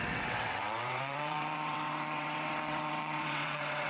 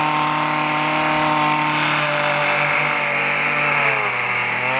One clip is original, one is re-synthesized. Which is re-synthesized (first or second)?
first